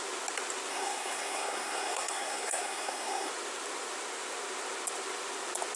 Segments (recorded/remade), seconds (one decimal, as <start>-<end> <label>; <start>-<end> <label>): 0.0-0.7 recorded; 0.7-3.3 remade; 3.3-5.8 recorded